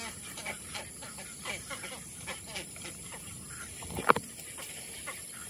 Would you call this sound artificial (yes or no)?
no